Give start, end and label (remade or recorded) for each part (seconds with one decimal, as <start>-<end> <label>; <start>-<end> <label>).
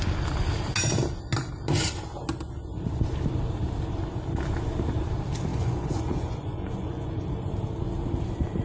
0.0-5.5 recorded; 5.5-7.2 remade; 7.2-8.6 recorded